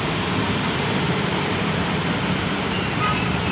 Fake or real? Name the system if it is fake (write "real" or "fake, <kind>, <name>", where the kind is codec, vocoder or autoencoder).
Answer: fake, vocoder, BigVGAN v2